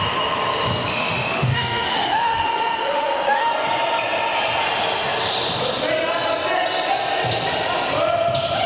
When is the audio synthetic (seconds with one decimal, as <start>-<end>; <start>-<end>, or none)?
0.9-3.5